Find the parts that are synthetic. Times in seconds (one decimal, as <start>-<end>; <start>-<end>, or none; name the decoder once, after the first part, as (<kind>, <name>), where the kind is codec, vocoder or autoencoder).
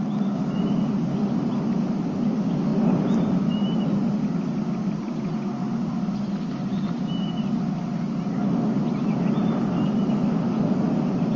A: none